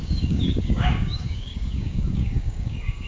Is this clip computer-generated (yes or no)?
yes